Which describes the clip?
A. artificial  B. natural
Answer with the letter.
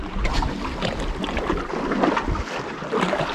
B